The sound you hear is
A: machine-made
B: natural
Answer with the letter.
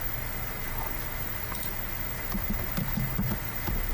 A